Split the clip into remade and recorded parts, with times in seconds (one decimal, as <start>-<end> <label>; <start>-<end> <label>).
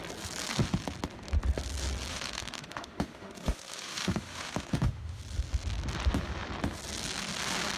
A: 0.0-2.1 recorded; 2.1-5.2 remade; 5.2-7.8 recorded